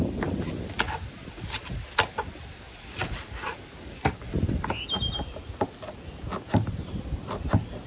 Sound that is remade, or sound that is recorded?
recorded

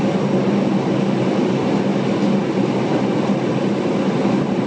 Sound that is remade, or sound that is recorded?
recorded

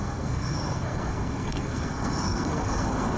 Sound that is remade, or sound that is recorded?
remade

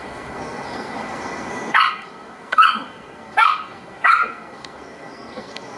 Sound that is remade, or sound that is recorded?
remade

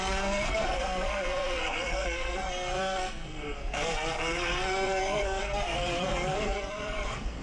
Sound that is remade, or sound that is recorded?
remade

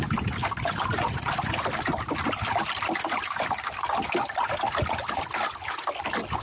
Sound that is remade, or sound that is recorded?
recorded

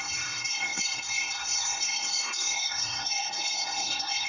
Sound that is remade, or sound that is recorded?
remade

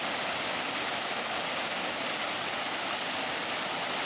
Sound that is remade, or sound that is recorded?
recorded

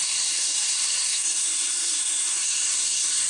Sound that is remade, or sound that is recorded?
remade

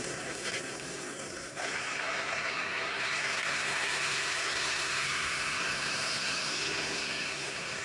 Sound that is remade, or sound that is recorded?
remade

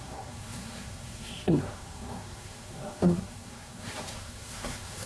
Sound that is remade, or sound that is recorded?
remade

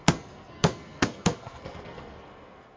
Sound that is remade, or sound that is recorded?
remade